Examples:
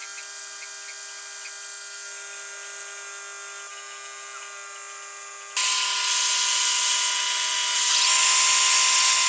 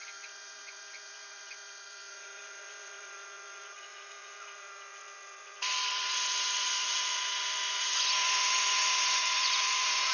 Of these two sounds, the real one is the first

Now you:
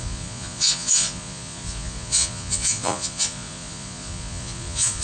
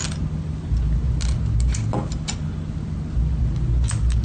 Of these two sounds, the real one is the second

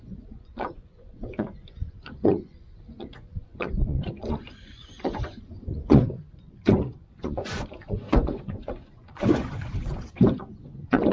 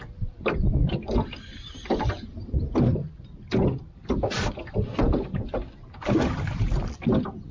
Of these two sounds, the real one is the second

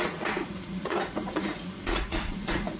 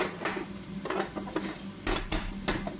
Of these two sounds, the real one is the second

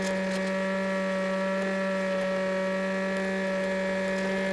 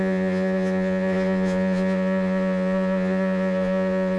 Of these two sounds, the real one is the first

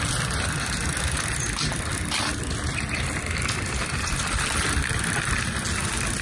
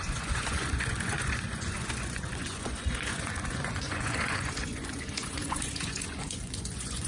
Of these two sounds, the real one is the first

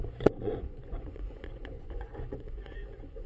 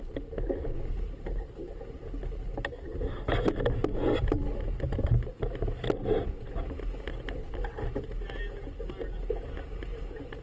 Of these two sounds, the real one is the second